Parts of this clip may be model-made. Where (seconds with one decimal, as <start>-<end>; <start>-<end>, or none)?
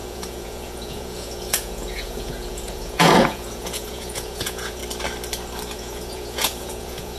0.0-4.8; 5.7-7.2